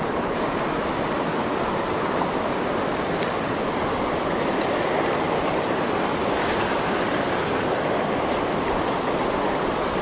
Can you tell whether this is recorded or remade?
recorded